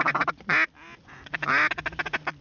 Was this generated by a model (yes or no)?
no